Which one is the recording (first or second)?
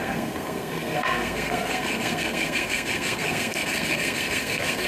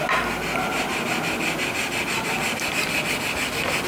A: second